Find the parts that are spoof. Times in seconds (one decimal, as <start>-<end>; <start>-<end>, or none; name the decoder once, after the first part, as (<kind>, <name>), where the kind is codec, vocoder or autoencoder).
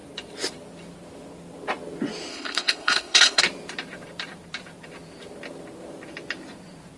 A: 2.3-3.4 (codec, HILCodec)